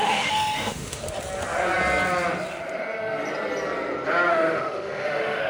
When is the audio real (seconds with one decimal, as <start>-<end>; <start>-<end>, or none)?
1.0-4.3